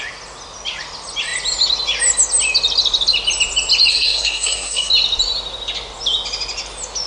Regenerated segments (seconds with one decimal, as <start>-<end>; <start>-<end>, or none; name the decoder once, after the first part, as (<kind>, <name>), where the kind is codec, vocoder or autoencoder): 3.9-4.9 (codec, SNAC)

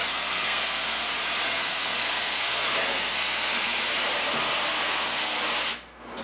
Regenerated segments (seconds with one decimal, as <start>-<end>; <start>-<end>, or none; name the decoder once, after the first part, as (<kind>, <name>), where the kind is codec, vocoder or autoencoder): 0.0-1.0 (codec, SNAC); 1.5-3.8; 4.8-5.4

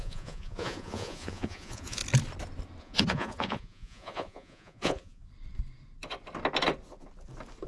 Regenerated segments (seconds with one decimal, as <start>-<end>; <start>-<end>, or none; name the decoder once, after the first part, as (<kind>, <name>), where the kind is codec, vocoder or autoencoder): 0.0-2.0 (vocoder, Vocos); 2.8-5.2

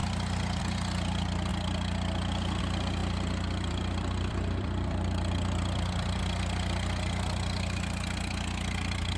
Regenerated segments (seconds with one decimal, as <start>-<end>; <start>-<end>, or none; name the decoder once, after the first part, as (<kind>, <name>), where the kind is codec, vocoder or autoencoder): 3.0-6.2 (vocoder, BigVGAN v2)